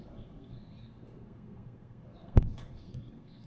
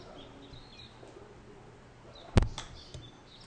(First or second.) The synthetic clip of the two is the first